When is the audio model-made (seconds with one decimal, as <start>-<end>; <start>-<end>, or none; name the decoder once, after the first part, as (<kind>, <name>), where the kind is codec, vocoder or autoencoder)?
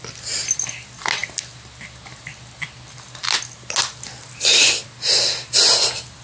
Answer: none